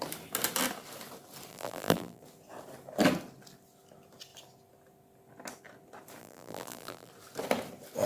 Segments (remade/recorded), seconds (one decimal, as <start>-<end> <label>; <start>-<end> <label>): 0.0-1.5 recorded; 1.5-2.2 remade; 2.2-6.2 recorded; 6.2-7.1 remade; 7.1-8.1 recorded